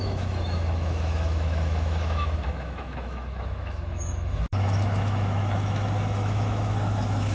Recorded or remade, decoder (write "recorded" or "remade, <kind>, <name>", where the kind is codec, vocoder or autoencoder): remade, autoencoder, DAC-VAE